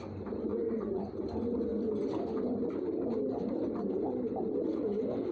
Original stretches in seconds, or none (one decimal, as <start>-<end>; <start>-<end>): 0.0-0.5; 1.0-5.3